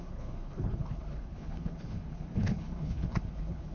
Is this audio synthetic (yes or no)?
yes